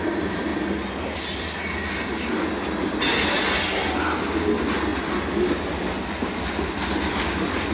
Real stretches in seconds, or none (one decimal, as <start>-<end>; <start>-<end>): 0.0-7.7